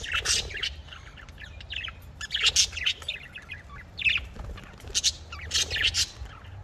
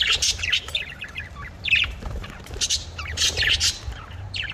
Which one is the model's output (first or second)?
second